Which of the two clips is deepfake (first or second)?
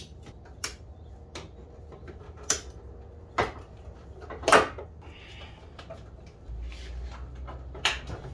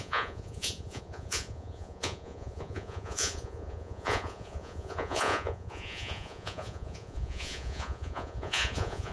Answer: second